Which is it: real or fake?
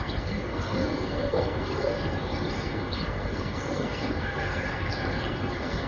fake